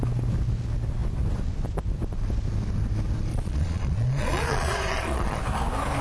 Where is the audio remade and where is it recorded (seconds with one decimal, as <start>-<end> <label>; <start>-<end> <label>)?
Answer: 0.0-3.3 recorded; 3.3-5.4 remade; 5.4-6.0 recorded